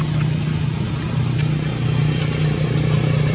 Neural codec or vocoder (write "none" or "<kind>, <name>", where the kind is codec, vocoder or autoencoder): none